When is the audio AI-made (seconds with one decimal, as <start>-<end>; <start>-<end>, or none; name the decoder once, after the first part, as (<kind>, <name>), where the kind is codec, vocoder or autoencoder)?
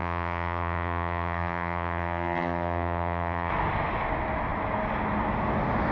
0.0-3.5 (vocoder, HiFi-GAN)